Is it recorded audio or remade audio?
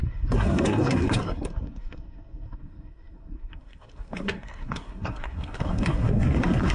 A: remade